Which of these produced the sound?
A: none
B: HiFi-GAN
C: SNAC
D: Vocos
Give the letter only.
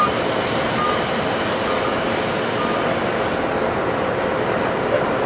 A